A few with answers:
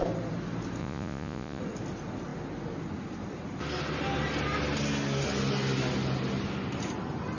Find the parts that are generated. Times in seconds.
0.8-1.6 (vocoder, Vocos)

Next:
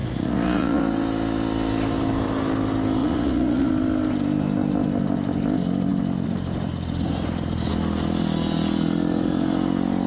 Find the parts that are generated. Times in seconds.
0.0-0.8 (vocoder, Vocos); 3.0-3.7

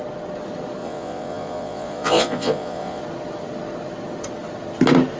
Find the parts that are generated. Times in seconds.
0.8-3.0 (vocoder, Vocos)

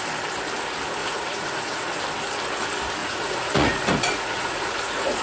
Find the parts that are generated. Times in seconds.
1.0-2.0 (vocoder, Vocos); 3.0-5.2

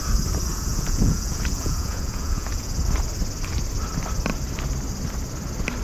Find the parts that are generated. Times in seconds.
0.7-2.8 (vocoder, Vocos)